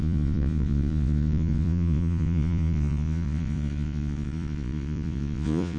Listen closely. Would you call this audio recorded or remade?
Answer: remade